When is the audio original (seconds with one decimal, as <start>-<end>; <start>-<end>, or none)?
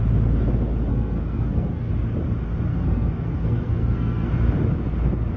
0.0-0.9; 1.9-2.7; 4.3-5.4